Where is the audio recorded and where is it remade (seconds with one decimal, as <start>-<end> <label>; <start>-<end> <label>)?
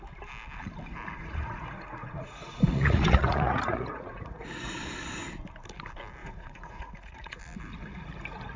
0.0-1.2 recorded; 1.2-4.8 remade; 4.8-6.2 recorded; 6.2-7.4 remade; 7.4-8.6 recorded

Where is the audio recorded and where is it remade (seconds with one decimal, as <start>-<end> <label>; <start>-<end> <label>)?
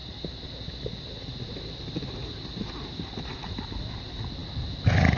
0.0-3.1 recorded; 3.1-4.4 remade; 4.4-5.2 recorded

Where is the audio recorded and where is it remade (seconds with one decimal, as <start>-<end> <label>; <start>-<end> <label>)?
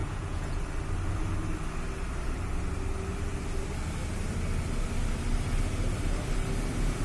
0.0-0.6 remade; 0.6-7.0 recorded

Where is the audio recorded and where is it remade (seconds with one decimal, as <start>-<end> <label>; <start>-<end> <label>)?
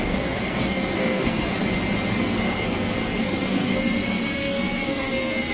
0.0-1.6 remade; 1.6-2.2 recorded; 2.2-5.5 remade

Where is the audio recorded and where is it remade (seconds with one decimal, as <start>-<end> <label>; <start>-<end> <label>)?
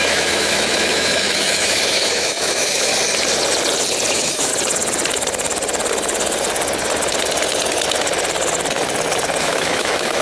0.0-2.9 remade; 2.9-4.1 recorded; 4.1-4.5 remade; 4.5-9.4 recorded; 9.4-10.2 remade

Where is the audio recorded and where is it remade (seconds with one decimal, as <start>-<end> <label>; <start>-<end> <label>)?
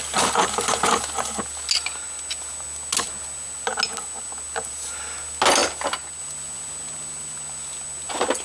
0.0-8.4 recorded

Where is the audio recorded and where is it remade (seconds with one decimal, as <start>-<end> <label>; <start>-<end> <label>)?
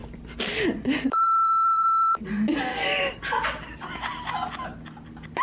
0.0-2.2 remade; 2.2-2.7 recorded; 2.7-3.7 remade; 3.7-5.4 recorded